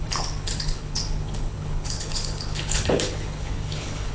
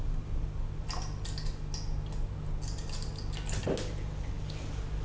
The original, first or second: second